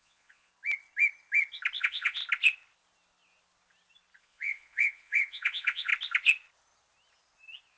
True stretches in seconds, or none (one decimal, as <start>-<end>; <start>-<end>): 0.5-1.8; 2.2-4.2; 5.9-7.8